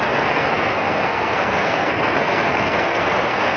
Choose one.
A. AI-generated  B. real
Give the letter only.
A